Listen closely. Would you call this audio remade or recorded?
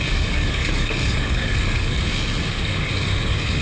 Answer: remade